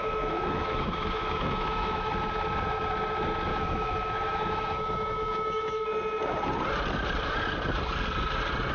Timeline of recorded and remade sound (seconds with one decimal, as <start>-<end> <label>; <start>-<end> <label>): 0.0-2.1 remade; 2.1-3.5 recorded; 3.5-5.8 remade; 5.8-8.7 recorded